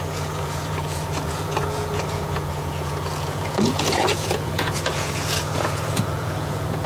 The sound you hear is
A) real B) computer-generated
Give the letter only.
B